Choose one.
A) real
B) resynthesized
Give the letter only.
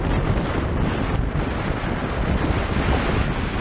A